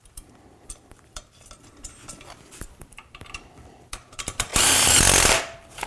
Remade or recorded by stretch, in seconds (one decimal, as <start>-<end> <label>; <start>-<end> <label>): 0.0-5.9 remade